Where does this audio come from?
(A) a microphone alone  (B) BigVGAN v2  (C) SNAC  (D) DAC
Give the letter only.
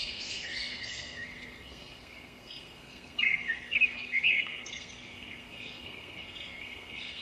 C